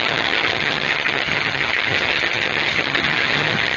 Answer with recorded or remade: remade